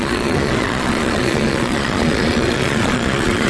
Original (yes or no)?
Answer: no